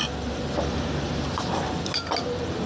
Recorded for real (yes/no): yes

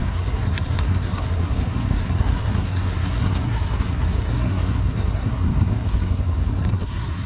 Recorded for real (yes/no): no